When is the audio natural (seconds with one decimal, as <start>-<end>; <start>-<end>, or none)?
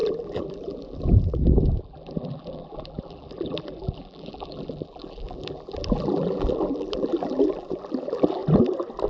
8.4-9.1